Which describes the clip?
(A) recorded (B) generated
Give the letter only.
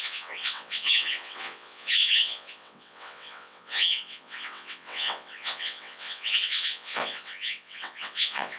B